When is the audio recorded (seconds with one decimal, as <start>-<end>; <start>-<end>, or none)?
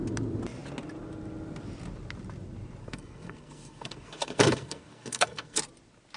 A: 0.0-2.8; 5.6-6.2